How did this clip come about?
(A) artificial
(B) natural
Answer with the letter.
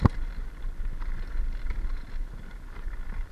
B